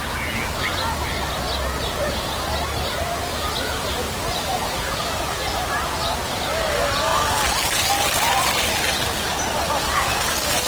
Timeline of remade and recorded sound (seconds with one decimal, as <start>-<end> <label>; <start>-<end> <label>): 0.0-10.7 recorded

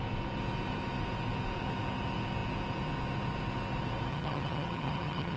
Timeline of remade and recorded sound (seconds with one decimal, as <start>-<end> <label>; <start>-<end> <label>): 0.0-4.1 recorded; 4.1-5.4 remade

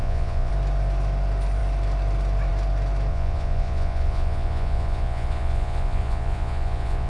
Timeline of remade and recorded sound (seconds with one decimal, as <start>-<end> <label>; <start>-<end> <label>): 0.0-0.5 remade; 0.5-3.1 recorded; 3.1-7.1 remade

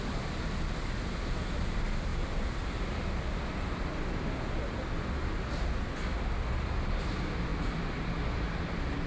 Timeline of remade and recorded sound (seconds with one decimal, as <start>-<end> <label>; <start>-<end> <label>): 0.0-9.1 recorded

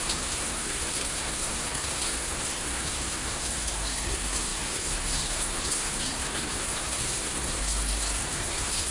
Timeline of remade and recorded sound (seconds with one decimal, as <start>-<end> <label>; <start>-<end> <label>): 0.0-8.9 remade

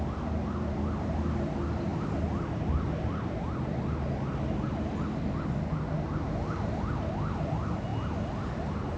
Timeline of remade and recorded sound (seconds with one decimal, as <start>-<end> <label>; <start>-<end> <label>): 0.0-9.0 recorded